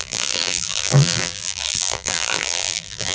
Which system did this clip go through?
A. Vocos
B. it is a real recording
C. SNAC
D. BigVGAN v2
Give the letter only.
D